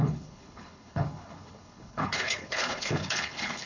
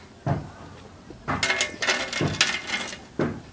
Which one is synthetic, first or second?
first